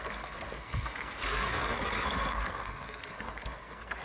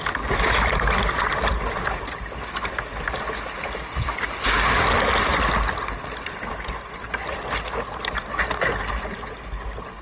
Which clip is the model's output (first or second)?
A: first